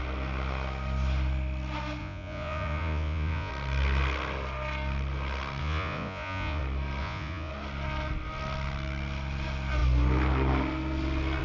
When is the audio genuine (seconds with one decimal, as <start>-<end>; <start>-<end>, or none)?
0.0-2.0; 3.5-5.6; 6.6-7.0; 7.5-11.4